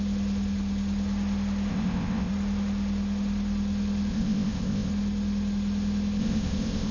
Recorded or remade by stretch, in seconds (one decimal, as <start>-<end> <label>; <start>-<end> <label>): 0.0-1.7 recorded; 1.7-2.3 remade; 2.3-4.1 recorded; 4.1-4.9 remade; 4.9-6.2 recorded; 6.2-6.9 remade